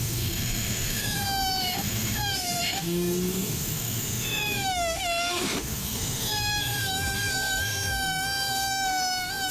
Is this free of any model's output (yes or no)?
no